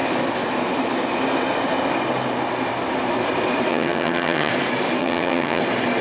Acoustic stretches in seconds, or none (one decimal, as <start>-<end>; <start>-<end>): 0.0-3.7; 4.5-5.0; 5.6-6.0